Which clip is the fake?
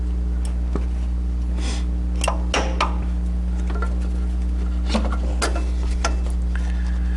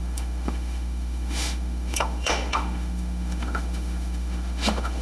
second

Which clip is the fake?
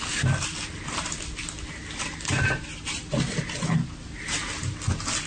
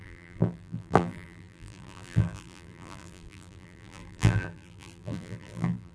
second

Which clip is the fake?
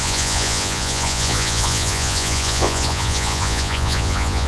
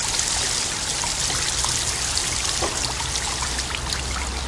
first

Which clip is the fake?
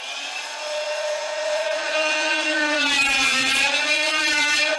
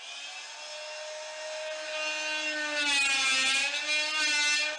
first